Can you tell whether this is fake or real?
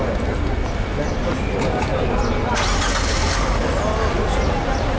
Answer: real